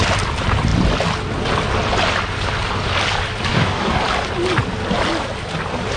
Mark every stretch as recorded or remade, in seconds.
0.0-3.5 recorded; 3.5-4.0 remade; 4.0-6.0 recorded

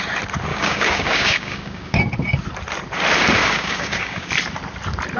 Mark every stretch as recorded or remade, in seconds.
0.0-0.5 recorded; 0.5-2.0 remade; 2.0-3.4 recorded; 3.4-4.3 remade; 4.3-5.2 recorded

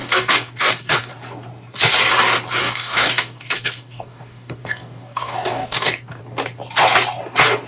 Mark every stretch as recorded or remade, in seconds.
0.0-1.1 remade; 1.1-2.6 recorded; 2.6-6.2 remade; 6.2-7.7 recorded

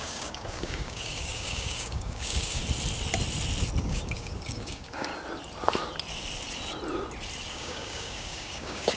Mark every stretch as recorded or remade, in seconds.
0.0-2.6 remade; 2.6-3.8 recorded; 3.8-5.1 remade; 5.1-7.5 recorded; 7.5-9.0 remade

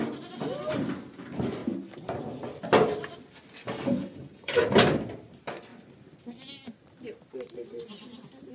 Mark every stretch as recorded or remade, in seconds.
0.0-3.6 recorded; 3.6-4.6 remade; 4.6-8.5 recorded

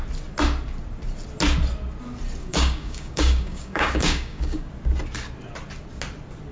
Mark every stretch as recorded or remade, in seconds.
0.0-2.4 recorded; 2.4-4.7 remade; 4.7-6.5 recorded

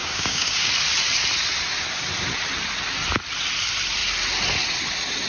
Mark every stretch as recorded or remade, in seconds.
0.0-0.7 remade; 0.7-5.3 recorded